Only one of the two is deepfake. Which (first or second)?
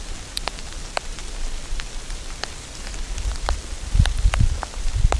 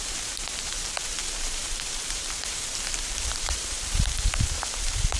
second